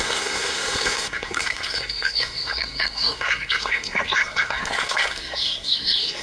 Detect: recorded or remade remade